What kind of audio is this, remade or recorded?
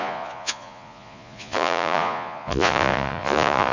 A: remade